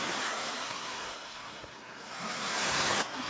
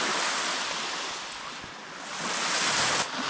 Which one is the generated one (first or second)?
first